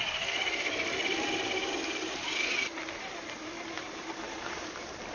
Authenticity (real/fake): real